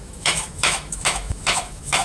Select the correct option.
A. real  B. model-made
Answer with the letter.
B